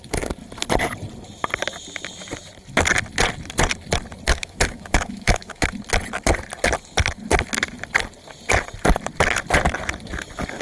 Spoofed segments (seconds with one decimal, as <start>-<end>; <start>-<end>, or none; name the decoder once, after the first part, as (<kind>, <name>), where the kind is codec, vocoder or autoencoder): 4.3-5.7 (autoencoder, DAC-VAE)